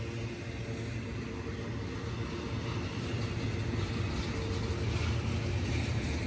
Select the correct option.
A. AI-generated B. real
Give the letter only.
B